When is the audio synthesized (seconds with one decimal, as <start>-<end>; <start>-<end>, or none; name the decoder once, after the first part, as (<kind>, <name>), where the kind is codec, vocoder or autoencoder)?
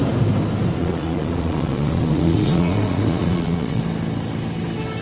0.8-3.8 (vocoder, Vocos)